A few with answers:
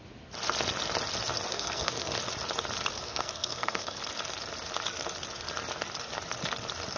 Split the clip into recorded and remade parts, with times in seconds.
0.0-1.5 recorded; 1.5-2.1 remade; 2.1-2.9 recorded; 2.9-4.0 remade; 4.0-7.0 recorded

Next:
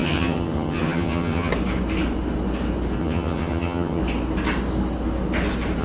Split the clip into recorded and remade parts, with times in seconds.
0.0-1.5 remade; 1.5-3.0 recorded; 3.0-4.0 remade; 4.0-5.8 recorded

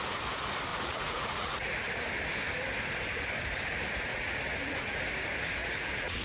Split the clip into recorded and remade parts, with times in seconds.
0.0-0.7 recorded; 0.7-1.7 remade; 1.7-4.1 recorded; 4.1-5.0 remade; 5.0-5.6 recorded; 5.6-6.2 remade

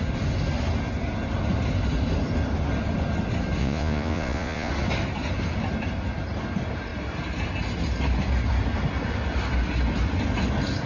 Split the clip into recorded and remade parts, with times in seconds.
0.0-3.6 recorded; 3.6-4.7 remade; 4.7-10.9 recorded

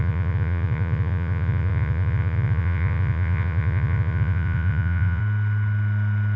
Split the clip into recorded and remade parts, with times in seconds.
0.0-5.2 remade; 5.2-6.4 recorded

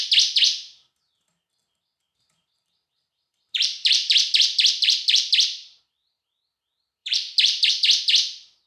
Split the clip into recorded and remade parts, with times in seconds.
0.0-2.1 recorded; 2.1-6.4 remade; 6.4-7.0 recorded; 7.0-7.7 remade; 7.7-8.7 recorded

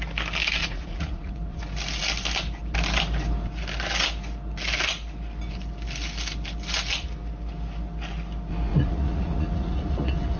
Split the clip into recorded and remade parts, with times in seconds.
0.0-0.6 recorded; 0.6-1.6 remade; 1.6-8.7 recorded; 8.7-10.4 remade